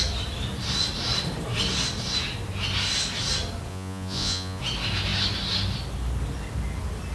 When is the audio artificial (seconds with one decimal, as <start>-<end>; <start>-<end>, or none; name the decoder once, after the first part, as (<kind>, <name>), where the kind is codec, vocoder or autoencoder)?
3.7-4.6 (vocoder, Vocos)